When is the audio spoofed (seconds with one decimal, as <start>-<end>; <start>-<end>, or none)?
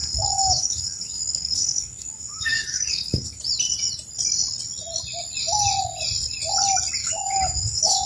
0.0-3.4; 7.0-8.1